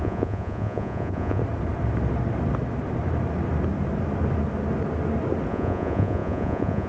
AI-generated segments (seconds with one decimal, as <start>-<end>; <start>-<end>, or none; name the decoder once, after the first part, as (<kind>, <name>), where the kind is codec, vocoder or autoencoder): 0.0-1.4 (vocoder, Vocos); 5.5-6.9